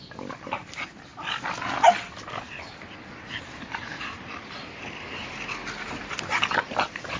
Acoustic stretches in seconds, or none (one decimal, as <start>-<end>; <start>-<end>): 0.0-7.2